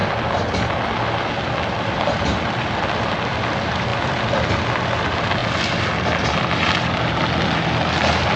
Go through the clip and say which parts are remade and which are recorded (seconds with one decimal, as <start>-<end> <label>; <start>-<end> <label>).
0.0-8.4 recorded